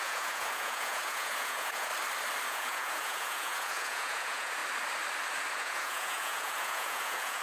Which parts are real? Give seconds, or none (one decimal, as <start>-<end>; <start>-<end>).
1.9-2.5; 4.6-5.6